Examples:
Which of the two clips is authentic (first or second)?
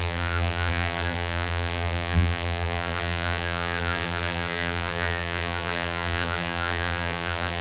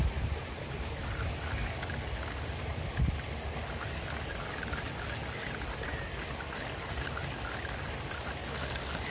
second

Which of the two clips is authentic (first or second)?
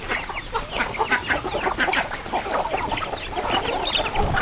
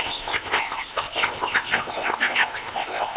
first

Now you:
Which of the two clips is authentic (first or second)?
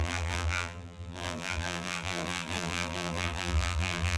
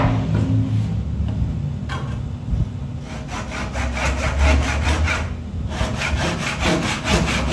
second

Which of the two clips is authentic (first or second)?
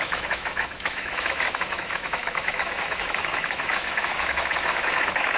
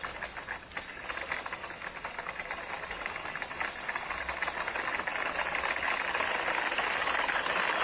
second